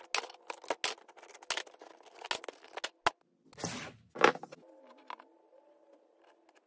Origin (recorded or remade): recorded